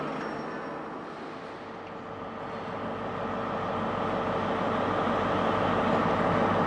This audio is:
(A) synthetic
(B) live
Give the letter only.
B